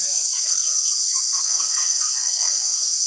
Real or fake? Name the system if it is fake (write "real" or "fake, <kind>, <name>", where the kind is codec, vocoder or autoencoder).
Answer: fake, codec, SNAC